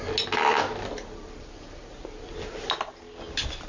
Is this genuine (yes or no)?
yes